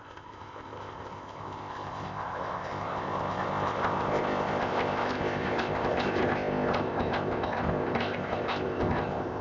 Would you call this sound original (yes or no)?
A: no